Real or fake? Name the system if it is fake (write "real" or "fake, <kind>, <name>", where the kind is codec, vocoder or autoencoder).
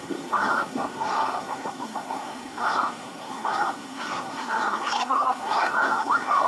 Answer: fake, codec, SNAC